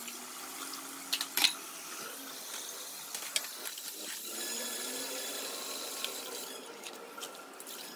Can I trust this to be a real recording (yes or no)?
yes